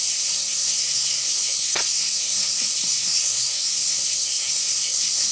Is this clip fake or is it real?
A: fake